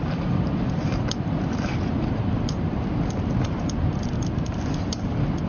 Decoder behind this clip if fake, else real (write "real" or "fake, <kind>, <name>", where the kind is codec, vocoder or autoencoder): fake, vocoder, BigVGAN v2